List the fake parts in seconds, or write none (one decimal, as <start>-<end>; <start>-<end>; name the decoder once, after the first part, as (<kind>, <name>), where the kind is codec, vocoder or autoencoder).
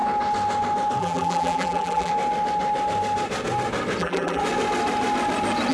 1.0-2.1 (vocoder, BigVGAN v2); 4.0-4.4